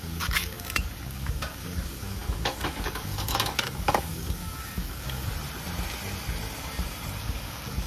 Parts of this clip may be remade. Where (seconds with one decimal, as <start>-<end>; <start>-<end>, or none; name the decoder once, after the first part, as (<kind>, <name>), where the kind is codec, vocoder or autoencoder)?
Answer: 0.0-5.3 (codec, DAC); 7.2-7.9